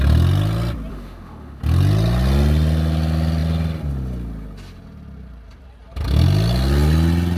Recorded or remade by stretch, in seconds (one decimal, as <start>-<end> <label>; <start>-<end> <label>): 0.0-0.9 recorded; 0.9-1.6 remade; 1.6-7.4 recorded